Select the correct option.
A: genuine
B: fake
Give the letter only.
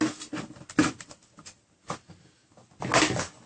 A